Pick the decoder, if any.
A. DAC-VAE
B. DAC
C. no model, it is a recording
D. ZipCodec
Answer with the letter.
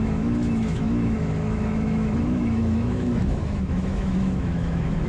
A